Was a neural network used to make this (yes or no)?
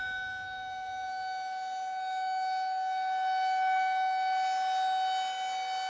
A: no